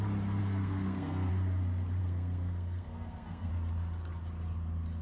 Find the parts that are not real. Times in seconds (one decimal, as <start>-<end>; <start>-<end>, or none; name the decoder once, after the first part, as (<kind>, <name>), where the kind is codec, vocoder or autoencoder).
0.4-1.3 (codec, SNAC); 2.0-3.5